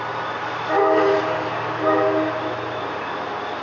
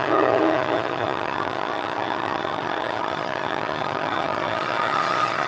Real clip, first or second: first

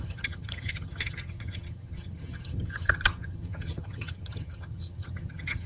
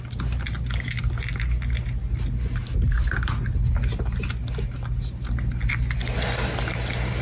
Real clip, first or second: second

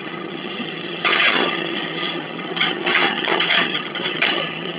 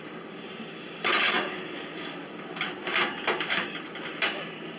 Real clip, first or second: second